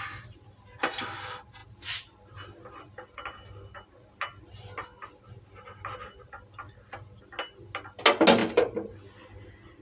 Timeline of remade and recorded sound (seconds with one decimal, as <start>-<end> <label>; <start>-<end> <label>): 0.0-9.8 recorded